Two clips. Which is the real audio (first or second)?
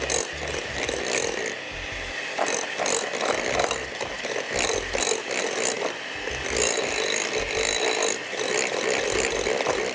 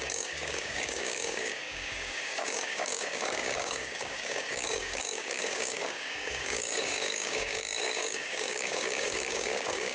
first